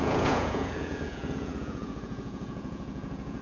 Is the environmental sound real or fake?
fake